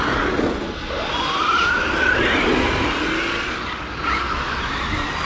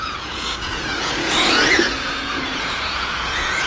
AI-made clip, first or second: second